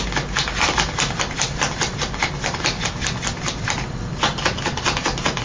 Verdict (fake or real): real